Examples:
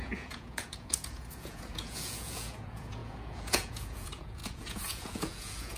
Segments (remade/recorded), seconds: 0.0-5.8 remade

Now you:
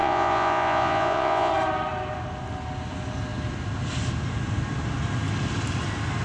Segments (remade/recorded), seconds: 0.0-1.5 remade; 1.5-6.2 recorded

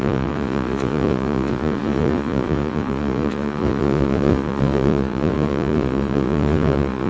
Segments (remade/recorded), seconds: 0.0-7.1 remade

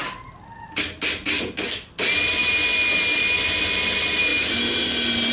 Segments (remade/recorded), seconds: 0.0-5.3 recorded

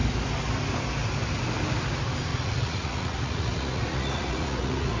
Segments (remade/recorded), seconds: 0.0-2.3 recorded; 2.3-5.0 remade